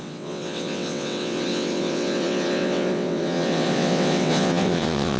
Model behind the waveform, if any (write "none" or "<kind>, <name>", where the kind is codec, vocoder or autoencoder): vocoder, WaveNeXt